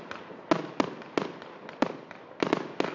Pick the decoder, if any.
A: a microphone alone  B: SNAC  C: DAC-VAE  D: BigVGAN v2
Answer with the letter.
A